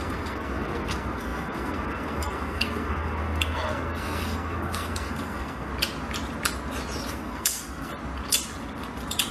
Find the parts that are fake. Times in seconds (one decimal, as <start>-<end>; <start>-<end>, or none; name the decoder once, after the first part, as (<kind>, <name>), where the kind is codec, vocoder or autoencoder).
0.0-5.7 (codec, SNAC); 7.1-7.9